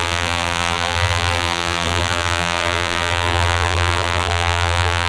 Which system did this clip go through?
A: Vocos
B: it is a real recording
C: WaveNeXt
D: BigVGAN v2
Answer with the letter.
D